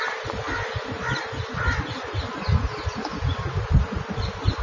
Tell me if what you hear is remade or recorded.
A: recorded